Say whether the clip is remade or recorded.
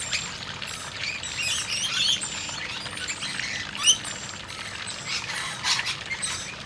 recorded